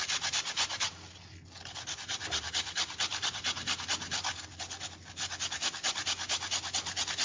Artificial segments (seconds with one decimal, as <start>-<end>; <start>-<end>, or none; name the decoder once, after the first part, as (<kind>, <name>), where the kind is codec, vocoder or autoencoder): none